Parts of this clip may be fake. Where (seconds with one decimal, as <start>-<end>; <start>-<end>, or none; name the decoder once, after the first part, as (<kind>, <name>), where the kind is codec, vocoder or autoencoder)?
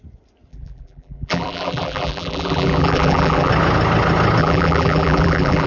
0.5-3.5 (vocoder, BigVGAN v2); 4.4-5.7